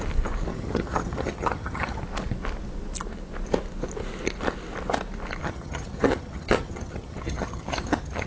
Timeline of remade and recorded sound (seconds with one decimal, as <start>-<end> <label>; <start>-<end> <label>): 0.0-0.5 recorded; 0.5-2.0 remade; 2.0-5.4 recorded; 5.4-8.3 remade